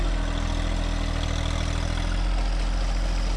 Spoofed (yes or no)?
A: no